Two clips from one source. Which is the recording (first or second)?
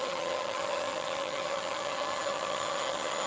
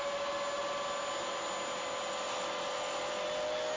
second